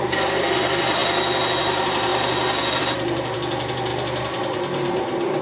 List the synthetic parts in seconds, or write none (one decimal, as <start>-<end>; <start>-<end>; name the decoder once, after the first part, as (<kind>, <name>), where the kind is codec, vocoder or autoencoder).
0.0-1.0 (vocoder, BigVGAN v2); 1.6-2.1; 2.8-3.9